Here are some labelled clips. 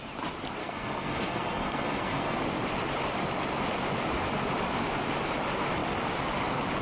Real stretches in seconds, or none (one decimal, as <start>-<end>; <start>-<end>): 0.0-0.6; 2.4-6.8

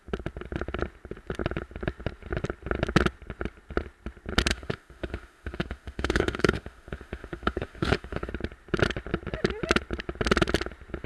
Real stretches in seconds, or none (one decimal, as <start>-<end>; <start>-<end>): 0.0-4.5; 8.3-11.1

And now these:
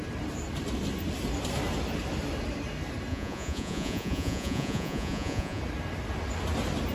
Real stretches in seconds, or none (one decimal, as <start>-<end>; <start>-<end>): 0.0-3.1; 5.6-6.9

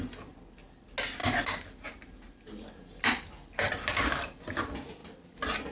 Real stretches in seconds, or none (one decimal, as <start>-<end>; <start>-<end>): 0.0-5.7